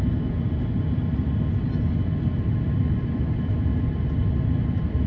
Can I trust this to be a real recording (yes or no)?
yes